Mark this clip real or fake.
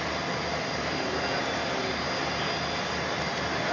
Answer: real